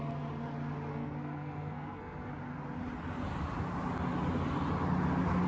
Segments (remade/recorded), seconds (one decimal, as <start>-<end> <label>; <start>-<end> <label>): 0.0-0.9 recorded; 0.9-2.3 remade; 2.3-5.5 recorded